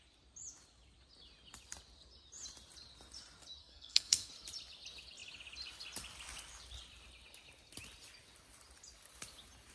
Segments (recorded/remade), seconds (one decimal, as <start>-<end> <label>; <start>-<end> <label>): 0.0-3.6 recorded; 3.6-4.3 remade; 4.3-9.7 recorded